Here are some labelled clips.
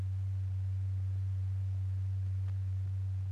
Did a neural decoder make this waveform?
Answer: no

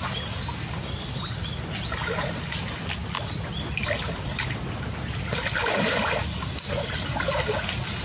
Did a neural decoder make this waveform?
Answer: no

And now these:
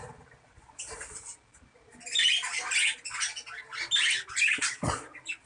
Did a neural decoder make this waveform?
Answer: no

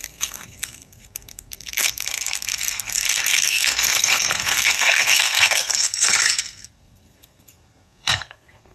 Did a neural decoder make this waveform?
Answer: yes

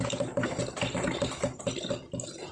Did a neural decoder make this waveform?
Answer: no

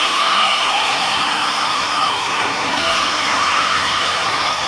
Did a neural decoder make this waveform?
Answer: yes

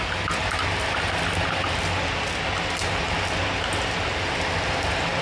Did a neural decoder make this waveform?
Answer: no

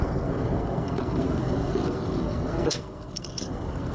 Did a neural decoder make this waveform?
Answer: yes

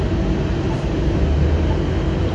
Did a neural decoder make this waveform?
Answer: no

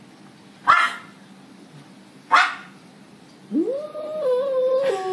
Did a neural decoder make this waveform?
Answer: no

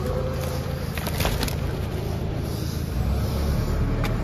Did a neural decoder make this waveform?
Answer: no